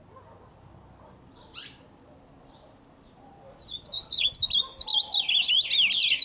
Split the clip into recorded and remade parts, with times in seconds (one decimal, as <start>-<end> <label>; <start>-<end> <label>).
0.0-3.5 recorded; 3.5-4.3 remade; 4.3-6.2 recorded